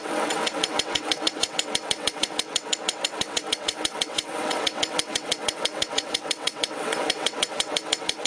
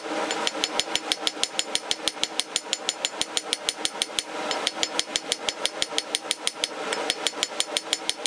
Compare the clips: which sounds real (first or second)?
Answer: second